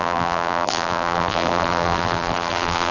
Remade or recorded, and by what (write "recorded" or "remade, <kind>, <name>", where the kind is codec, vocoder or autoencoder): remade, vocoder, BigVGAN v2